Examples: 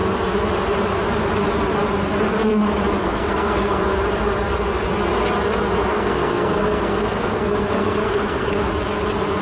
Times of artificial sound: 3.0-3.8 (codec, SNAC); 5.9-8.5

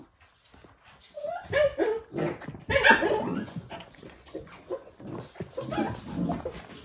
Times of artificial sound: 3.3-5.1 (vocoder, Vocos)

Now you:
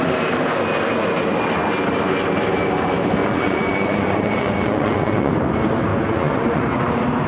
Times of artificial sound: 3.2-5.3 (vocoder, Vocos); 5.9-6.6

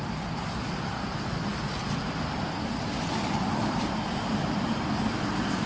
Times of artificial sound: none